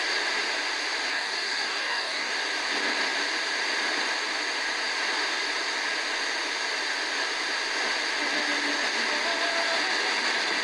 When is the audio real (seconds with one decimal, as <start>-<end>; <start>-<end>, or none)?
0.0-1.1; 2.3-10.6